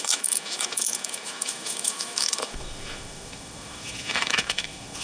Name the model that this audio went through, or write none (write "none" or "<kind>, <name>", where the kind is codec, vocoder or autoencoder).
autoencoder, DAC-VAE